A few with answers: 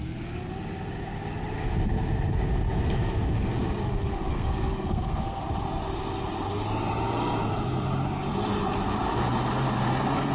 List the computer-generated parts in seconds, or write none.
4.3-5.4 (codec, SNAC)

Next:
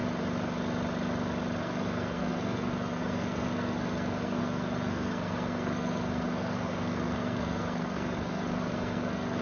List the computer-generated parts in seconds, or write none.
1.6-9.4 (codec, SNAC)

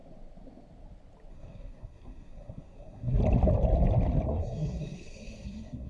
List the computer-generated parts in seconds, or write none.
1.3-3.2 (codec, SNAC); 4.3-5.9

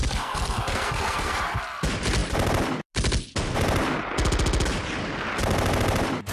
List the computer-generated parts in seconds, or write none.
0.0-1.6 (codec, SNAC)

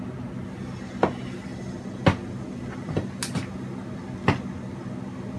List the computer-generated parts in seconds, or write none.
none

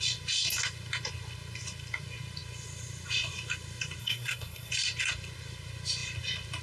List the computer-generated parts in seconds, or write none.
4.0-4.7 (codec, SNAC)

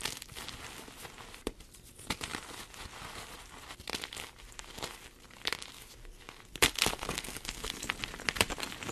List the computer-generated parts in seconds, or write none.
6.9-7.9 (codec, SNAC)